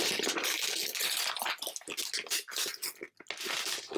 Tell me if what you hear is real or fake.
real